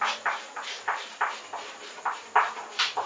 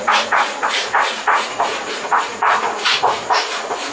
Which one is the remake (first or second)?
second